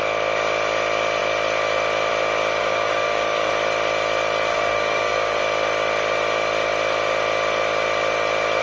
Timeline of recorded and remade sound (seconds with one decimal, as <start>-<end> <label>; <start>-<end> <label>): 0.0-2.6 recorded; 2.6-3.5 remade; 3.5-4.5 recorded; 4.5-5.4 remade; 5.4-8.6 recorded